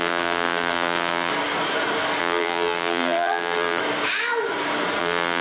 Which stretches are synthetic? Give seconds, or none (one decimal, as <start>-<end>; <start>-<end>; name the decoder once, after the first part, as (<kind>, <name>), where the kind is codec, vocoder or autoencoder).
0.0-1.3 (vocoder, BigVGAN v2); 2.2-3.8; 5.0-5.4